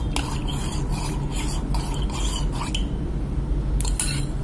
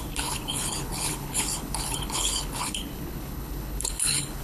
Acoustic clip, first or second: first